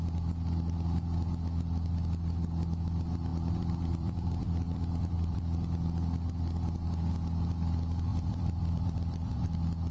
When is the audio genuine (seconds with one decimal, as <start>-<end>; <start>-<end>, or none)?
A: 0.0-3.3; 5.4-8.1; 9.5-9.9